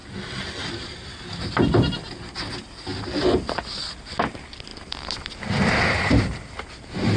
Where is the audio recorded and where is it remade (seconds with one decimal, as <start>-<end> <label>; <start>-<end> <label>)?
0.0-7.2 recorded